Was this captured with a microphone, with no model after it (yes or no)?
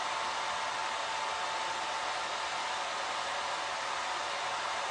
yes